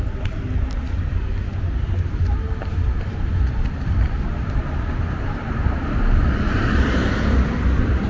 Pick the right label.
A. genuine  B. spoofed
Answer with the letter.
A